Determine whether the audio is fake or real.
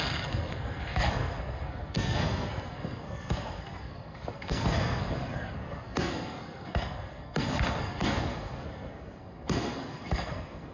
fake